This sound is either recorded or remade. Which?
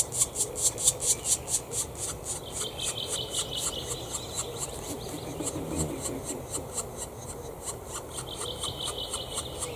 recorded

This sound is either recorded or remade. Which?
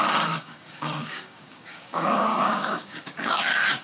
remade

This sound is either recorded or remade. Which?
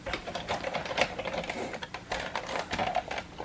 recorded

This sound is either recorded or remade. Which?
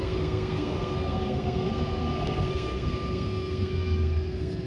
remade